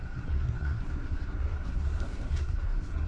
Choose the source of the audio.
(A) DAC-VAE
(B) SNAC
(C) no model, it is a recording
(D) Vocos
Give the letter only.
B